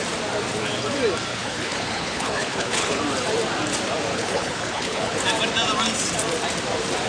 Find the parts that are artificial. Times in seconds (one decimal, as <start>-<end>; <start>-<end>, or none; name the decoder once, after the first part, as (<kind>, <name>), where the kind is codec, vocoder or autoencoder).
1.3-3.0 (codec, HILCodec); 4.1-5.2